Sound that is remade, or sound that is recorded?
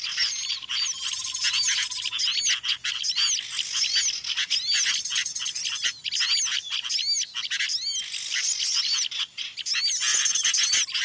recorded